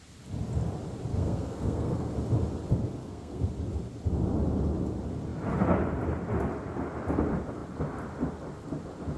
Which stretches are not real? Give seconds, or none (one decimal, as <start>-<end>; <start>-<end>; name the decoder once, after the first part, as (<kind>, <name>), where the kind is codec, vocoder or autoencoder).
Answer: 1.1-2.1 (codec, SNAC); 3.0-3.5